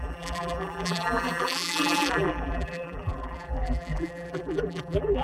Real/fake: fake